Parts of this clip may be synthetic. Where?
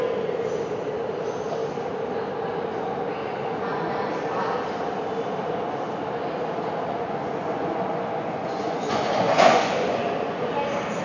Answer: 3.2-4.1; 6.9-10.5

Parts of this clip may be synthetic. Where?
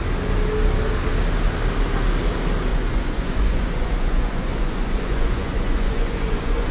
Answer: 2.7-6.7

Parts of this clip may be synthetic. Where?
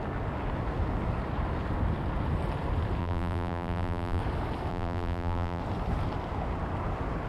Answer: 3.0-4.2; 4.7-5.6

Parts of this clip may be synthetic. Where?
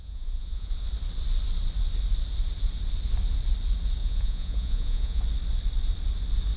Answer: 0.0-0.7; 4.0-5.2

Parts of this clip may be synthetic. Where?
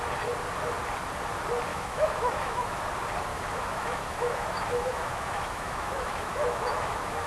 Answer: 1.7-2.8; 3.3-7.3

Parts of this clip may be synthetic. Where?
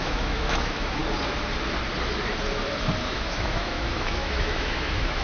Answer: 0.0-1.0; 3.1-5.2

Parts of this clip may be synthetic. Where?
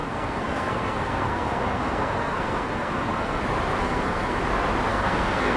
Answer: 0.0-3.4; 3.8-4.4; 4.9-5.6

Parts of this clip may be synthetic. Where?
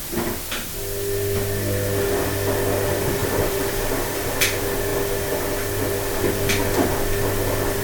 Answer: 3.2-3.8